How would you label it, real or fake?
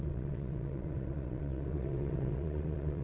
fake